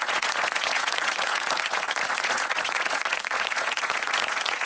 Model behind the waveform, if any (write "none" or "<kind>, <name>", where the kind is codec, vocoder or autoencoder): vocoder, Vocos